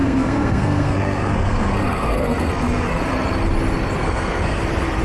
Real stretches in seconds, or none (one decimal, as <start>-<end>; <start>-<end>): 3.0-4.0; 4.6-5.0